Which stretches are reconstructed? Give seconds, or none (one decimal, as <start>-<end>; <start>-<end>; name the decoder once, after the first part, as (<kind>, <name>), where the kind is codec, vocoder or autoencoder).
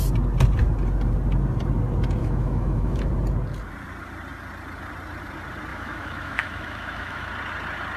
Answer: 2.2-3.1 (autoencoder, DAC-VAE); 5.7-7.3